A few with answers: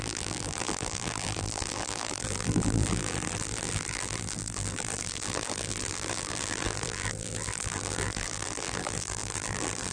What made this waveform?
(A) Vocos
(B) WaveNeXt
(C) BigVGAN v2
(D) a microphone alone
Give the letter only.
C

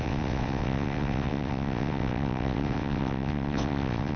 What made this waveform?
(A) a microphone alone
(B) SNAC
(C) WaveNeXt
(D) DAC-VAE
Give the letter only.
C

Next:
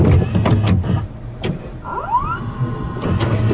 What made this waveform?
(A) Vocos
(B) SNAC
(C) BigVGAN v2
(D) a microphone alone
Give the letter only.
D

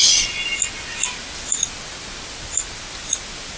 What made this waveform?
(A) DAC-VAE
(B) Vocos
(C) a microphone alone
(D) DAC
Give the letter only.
C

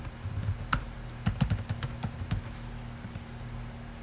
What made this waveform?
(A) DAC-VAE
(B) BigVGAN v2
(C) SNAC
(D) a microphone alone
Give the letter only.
D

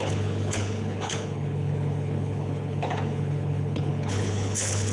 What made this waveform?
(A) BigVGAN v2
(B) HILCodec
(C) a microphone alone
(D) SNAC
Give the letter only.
B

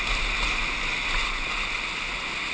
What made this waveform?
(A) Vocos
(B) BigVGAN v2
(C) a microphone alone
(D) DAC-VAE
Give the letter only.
C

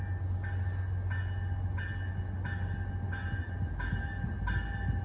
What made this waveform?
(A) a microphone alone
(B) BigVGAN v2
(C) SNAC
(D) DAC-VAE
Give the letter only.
A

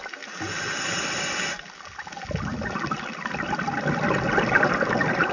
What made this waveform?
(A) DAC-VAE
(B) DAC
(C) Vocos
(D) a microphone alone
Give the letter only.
D